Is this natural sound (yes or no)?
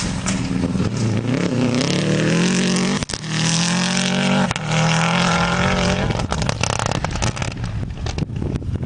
yes